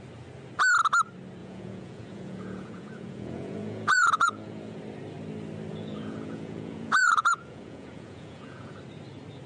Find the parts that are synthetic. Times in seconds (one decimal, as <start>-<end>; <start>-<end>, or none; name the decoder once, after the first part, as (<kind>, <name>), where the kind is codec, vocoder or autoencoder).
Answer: 1.4-4.8 (vocoder, Vocos); 5.7-8.8